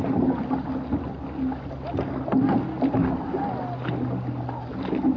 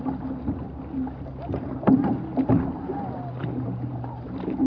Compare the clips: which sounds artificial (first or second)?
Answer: second